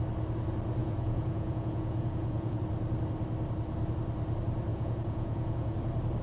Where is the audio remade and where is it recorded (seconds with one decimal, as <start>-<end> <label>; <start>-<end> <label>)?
0.0-0.8 recorded; 0.8-2.6 remade; 2.6-4.7 recorded; 4.7-5.8 remade; 5.8-6.2 recorded